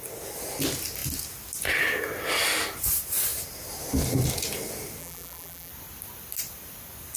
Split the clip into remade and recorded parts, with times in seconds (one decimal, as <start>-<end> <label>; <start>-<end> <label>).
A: 0.0-5.0 recorded; 5.0-5.7 remade; 5.7-7.2 recorded